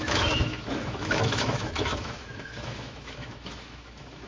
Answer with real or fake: fake